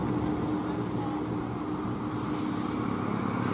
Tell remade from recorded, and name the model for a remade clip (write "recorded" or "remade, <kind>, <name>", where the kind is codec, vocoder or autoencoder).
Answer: recorded